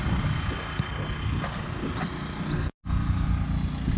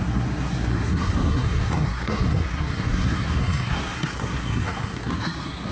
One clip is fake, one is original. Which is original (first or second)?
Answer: first